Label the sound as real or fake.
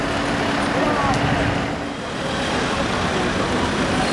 real